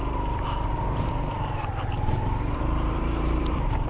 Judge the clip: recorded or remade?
remade